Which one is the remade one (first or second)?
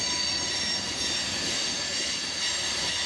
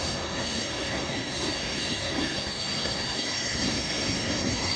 second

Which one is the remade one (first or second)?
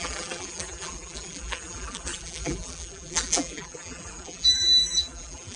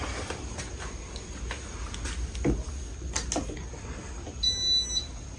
first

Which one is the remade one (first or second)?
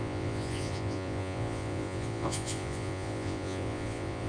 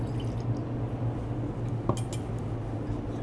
first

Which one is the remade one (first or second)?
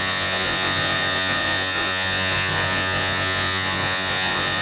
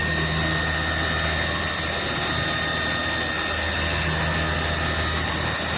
first